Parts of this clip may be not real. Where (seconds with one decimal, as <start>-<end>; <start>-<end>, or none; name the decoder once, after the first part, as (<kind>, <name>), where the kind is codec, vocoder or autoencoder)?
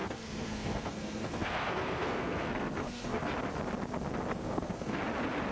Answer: 0.0-3.3 (codec, SNAC); 4.3-5.0